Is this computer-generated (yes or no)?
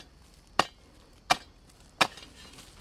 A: no